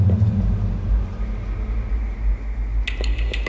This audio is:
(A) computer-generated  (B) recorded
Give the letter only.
B